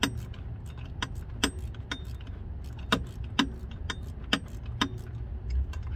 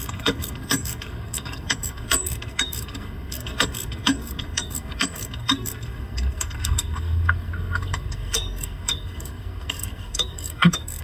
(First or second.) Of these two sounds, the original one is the first